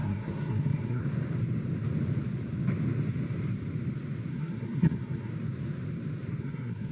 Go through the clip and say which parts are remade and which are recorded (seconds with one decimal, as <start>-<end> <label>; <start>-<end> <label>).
0.0-1.0 remade; 1.0-4.3 recorded; 4.3-5.3 remade; 5.3-6.4 recorded; 6.4-6.9 remade